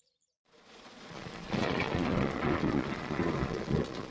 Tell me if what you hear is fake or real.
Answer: fake